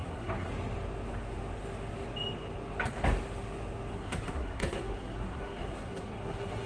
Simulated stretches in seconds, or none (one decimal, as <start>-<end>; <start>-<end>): 0.0-0.5; 3.9-6.7